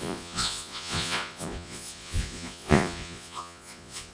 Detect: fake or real fake